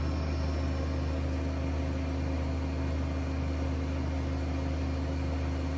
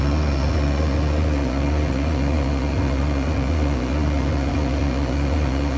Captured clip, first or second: first